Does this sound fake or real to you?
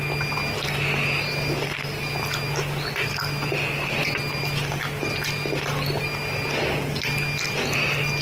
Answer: real